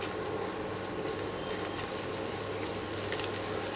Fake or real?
real